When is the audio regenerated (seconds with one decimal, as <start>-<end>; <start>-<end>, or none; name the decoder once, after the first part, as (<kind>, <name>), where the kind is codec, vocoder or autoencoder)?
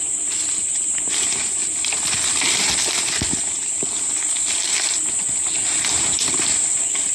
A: none